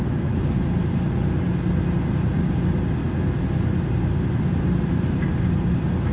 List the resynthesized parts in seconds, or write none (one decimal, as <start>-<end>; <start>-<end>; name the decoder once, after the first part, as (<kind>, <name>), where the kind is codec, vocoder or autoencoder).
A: none